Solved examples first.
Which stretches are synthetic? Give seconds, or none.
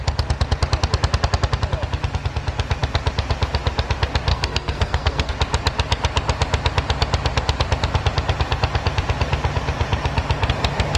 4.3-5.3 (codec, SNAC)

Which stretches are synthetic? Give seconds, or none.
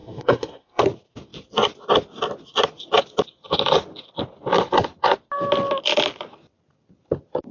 0.0-0.8 (codec, SNAC)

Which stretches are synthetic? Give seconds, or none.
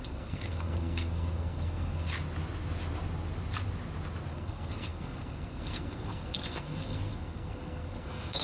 0.0-2.1 (codec, SNAC); 4.3-8.4